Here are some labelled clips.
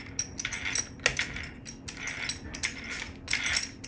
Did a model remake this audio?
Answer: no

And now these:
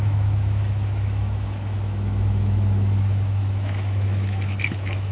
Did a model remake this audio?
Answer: yes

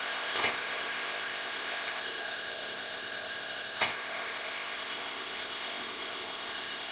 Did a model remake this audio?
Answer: yes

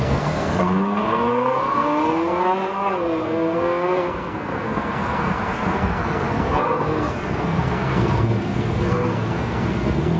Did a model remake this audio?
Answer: yes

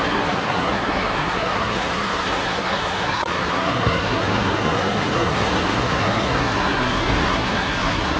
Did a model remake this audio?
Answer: yes